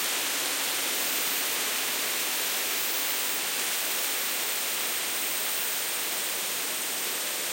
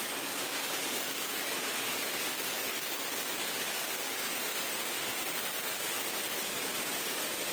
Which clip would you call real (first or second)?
first